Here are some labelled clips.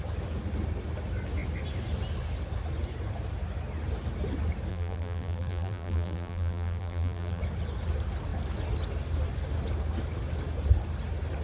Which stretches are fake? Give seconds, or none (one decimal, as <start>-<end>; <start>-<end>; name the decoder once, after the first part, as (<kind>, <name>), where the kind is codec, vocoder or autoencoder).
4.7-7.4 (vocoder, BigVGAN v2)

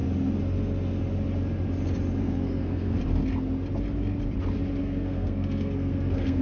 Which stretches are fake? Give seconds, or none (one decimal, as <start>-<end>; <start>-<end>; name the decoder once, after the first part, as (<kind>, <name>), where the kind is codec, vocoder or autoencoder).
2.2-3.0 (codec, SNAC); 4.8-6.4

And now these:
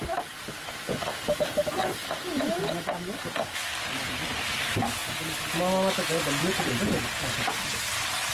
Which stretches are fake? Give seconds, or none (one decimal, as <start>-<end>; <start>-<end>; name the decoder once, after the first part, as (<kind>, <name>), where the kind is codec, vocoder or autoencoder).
none